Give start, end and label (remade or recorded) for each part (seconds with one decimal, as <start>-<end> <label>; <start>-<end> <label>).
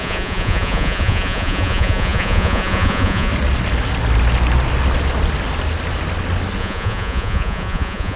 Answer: 0.0-3.3 remade; 3.3-6.6 recorded; 6.6-8.2 remade